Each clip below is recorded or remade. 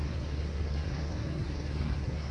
remade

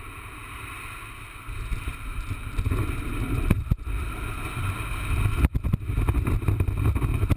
recorded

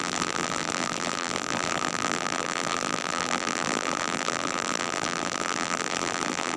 remade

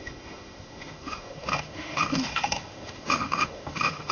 remade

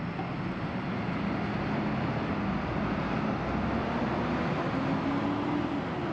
recorded